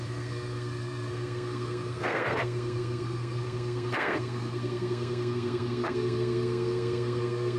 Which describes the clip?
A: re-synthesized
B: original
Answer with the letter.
A